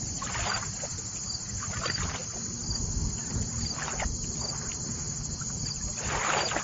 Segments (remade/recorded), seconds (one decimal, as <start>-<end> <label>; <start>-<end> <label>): 0.0-6.6 recorded